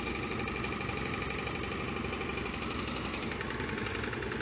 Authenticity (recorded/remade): recorded